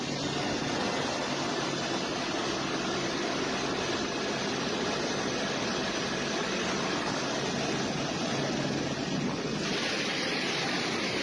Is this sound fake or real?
real